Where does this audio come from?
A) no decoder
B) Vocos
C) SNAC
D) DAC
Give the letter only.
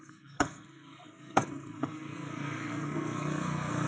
C